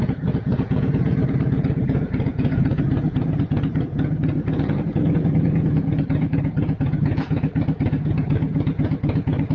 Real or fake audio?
fake